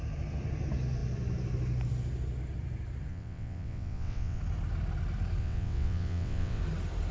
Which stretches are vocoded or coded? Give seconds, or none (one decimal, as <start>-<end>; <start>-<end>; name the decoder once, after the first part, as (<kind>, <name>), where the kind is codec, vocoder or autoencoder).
3.1-4.4 (vocoder, WaveNeXt); 5.4-6.6